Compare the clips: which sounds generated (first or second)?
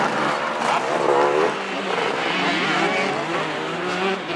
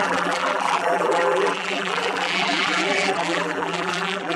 second